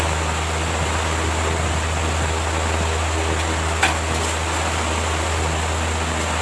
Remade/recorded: recorded